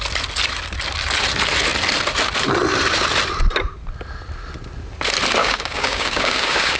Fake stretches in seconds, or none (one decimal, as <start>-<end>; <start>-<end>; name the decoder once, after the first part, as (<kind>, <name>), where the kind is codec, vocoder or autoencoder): 5.4-6.8 (codec, DAC)